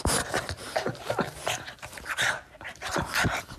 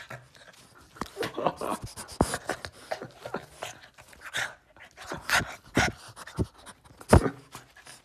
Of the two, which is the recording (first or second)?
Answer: second